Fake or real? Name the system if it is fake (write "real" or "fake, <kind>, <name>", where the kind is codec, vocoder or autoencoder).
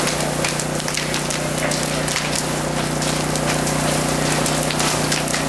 real